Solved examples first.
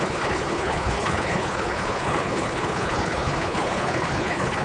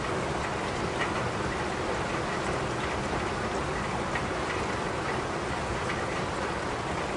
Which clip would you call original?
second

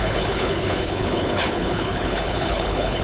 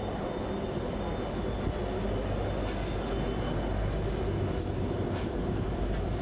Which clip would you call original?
second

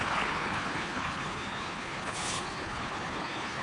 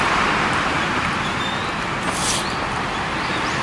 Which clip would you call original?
second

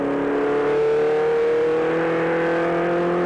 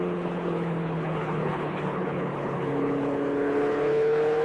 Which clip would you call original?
first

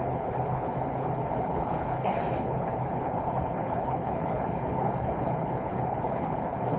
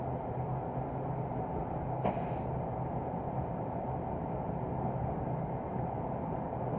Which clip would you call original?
second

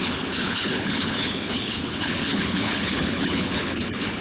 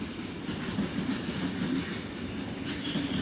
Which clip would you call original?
second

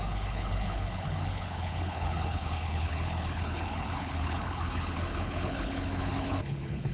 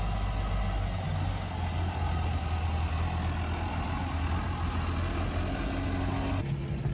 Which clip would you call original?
second